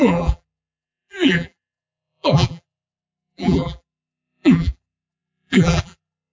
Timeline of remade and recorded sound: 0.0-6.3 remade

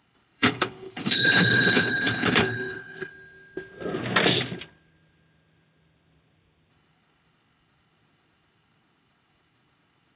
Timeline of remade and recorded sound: 0.0-3.1 remade; 3.1-6.7 recorded; 6.7-10.2 remade

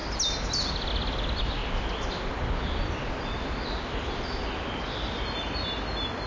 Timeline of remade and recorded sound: 0.0-6.3 recorded

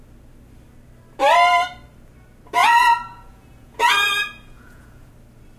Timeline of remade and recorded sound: 0.0-2.6 recorded; 2.6-5.1 remade; 5.1-5.6 recorded

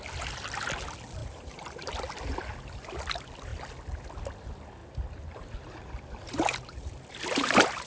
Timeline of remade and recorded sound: 0.0-1.2 recorded; 1.2-1.9 remade; 1.9-4.8 recorded; 4.8-6.3 remade; 6.3-7.9 recorded

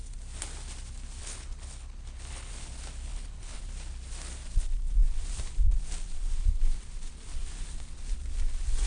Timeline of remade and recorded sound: 0.0-1.2 recorded; 1.2-2.5 remade; 2.5-3.1 recorded; 3.1-3.6 remade; 3.6-8.9 recorded

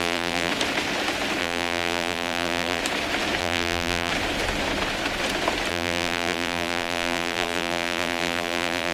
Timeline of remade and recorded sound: 0.0-0.5 remade; 0.5-1.4 recorded; 1.4-2.8 remade; 2.8-3.4 recorded; 3.4-4.1 remade; 4.1-5.7 recorded; 5.7-8.9 remade

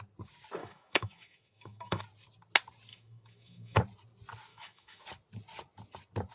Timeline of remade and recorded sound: 0.0-0.6 recorded; 0.6-2.0 remade; 2.0-2.9 recorded; 2.9-3.8 remade; 3.8-4.5 recorded; 4.5-5.0 remade; 5.0-6.3 recorded